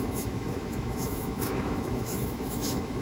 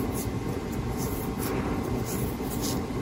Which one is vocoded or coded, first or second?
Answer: first